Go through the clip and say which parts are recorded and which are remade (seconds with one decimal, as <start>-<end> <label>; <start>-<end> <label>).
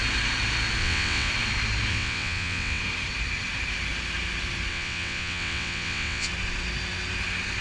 0.0-0.8 recorded; 0.8-1.3 remade; 1.3-1.9 recorded; 1.9-2.8 remade; 2.8-4.7 recorded; 4.7-6.3 remade; 6.3-7.6 recorded